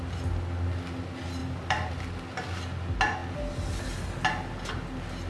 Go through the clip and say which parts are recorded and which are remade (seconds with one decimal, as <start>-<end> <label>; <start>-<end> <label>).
0.0-1.4 recorded; 1.4-1.9 remade; 1.9-5.3 recorded